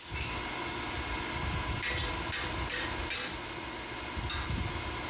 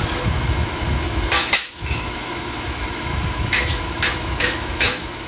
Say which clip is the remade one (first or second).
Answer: second